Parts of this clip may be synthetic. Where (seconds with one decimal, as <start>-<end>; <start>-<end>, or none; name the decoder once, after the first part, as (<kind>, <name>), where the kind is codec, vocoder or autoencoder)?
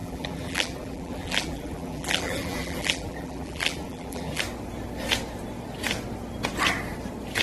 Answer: 0.0-4.4 (vocoder, BigVGAN v2)